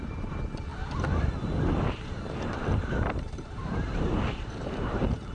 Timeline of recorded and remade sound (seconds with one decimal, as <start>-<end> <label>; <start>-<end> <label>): 0.0-0.7 remade; 0.7-2.5 recorded; 2.5-5.3 remade